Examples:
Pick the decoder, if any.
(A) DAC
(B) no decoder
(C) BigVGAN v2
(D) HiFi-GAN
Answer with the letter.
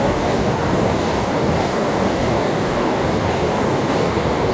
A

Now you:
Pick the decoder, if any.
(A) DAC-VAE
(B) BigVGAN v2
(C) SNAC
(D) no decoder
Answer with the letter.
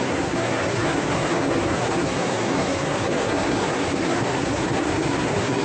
C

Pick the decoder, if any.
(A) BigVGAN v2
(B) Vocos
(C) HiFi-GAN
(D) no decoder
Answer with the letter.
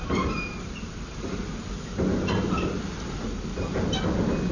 D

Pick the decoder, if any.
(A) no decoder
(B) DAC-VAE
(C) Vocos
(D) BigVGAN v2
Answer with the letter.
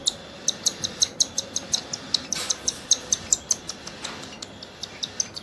A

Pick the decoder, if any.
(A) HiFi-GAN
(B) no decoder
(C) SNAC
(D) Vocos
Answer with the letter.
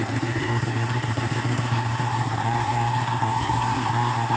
C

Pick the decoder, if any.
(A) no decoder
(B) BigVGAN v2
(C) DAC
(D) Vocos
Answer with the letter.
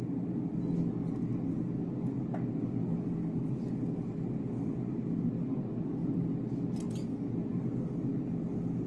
A